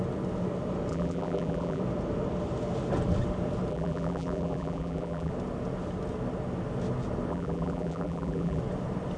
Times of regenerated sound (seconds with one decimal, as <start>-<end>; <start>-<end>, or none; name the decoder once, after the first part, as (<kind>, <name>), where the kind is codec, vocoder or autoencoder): 0.9-1.8 (vocoder, BigVGAN v2); 3.7-5.3; 7.3-8.6